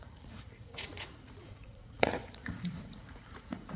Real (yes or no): no